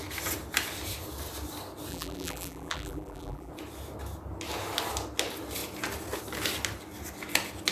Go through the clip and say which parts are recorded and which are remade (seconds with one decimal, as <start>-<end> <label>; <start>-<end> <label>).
0.0-1.9 recorded; 1.9-3.5 remade; 3.5-7.7 recorded